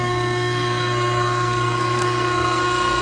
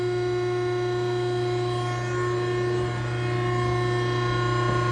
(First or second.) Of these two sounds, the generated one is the first